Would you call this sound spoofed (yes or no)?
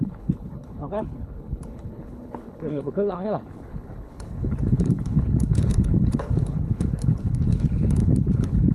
yes